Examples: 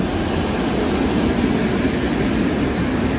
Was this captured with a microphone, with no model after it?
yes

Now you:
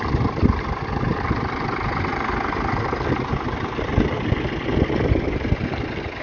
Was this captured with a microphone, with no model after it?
yes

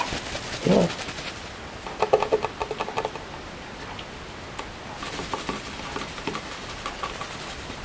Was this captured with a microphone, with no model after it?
yes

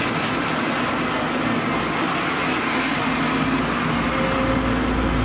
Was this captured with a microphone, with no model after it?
yes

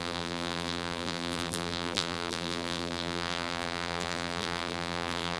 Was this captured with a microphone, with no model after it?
no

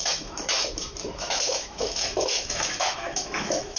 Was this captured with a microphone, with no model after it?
no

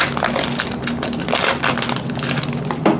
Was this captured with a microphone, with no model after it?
yes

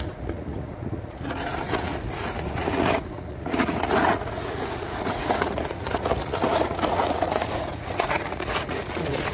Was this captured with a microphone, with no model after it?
no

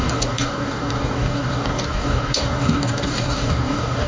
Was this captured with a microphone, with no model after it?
no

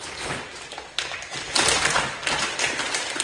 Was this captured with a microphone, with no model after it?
yes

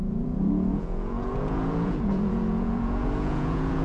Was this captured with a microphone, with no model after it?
no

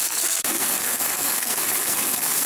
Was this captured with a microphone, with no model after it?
no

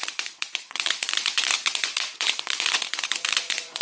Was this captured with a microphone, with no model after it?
no